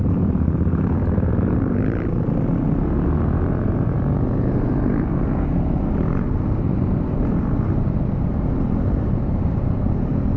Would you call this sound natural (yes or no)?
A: no